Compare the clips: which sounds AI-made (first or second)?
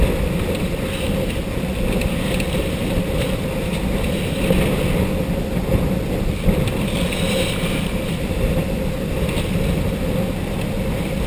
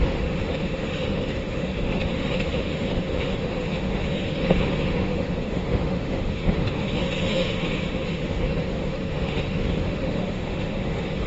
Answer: second